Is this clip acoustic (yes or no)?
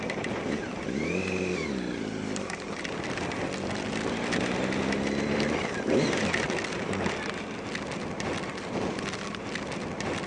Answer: yes